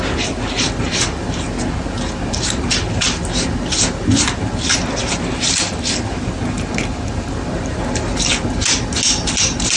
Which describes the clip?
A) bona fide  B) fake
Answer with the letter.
A